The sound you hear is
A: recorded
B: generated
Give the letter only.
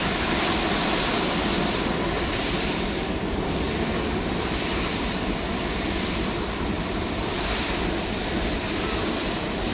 A